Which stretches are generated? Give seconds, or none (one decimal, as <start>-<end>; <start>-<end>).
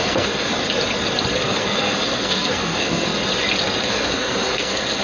0.0-0.5; 1.3-3.1; 3.8-5.0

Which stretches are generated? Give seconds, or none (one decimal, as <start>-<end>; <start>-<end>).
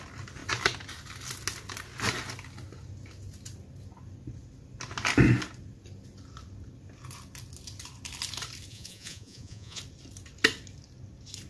8.7-9.8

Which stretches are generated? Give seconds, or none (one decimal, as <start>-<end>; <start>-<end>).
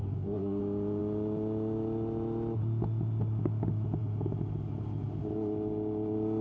0.0-0.6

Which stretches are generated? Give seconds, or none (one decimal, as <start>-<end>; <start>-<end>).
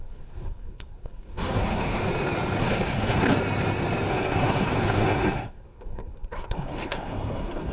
0.0-2.0; 2.6-3.3; 4.1-7.7